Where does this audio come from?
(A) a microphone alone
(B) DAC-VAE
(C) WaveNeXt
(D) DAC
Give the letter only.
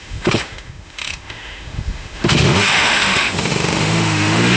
B